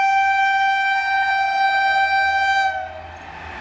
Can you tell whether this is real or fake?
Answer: real